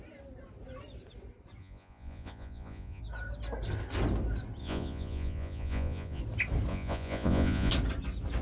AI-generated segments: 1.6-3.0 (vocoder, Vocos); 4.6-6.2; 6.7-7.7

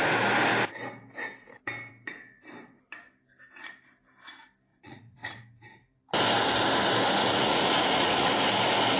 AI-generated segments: 4.7-5.4 (vocoder, Vocos); 7.2-8.3

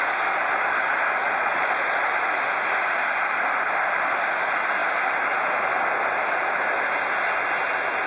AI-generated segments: 1.2-2.1 (vocoder, Vocos)